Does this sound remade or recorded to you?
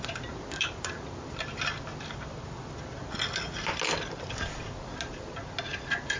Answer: recorded